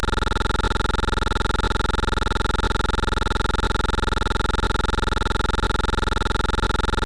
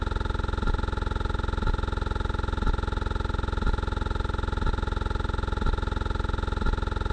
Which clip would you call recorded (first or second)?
first